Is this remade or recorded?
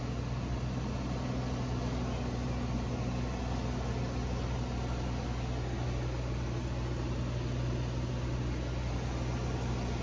recorded